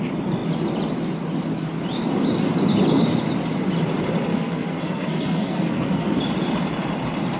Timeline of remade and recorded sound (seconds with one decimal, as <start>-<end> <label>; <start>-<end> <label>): 0.0-4.3 recorded; 4.3-6.2 remade; 6.2-7.4 recorded